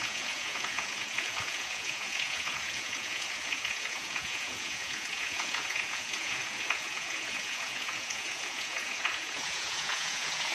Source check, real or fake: fake